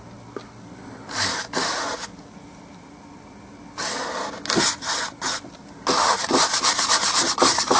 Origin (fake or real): real